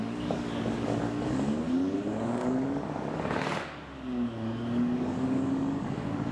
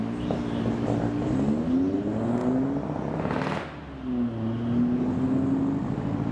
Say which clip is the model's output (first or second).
first